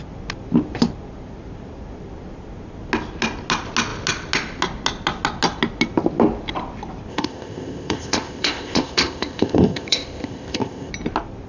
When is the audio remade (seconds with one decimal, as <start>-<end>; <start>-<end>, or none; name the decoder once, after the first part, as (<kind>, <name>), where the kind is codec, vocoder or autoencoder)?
7.1-10.9 (codec, ZipCodec)